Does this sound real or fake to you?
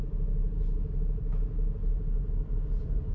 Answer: real